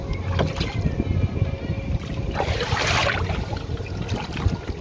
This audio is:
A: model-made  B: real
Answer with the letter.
B